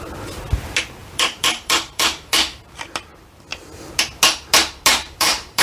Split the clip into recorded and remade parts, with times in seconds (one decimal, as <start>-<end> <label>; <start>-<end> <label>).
0.0-1.0 recorded; 1.0-2.6 remade; 2.6-4.9 recorded; 4.9-5.6 remade